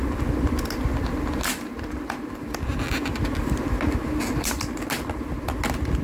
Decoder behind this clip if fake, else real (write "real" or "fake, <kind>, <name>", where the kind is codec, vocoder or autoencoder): real